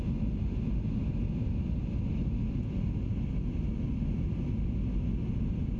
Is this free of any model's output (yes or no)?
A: yes